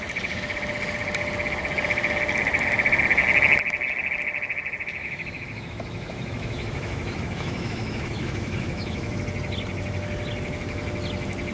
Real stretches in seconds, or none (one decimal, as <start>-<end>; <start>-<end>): 0.0-5.0; 9.2-11.5